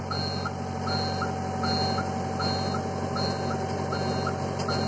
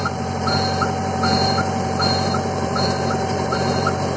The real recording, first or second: first